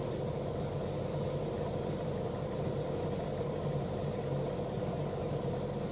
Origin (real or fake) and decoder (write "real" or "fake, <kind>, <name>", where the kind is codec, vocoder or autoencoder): real